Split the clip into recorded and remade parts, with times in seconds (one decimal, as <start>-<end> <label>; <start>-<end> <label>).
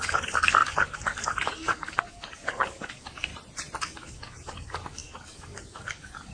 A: 0.0-3.3 remade; 3.3-3.8 recorded; 3.8-6.3 remade